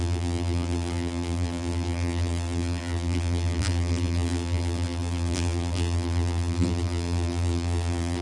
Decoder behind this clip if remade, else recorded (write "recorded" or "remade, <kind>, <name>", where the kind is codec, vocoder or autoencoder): remade, vocoder, BigVGAN v2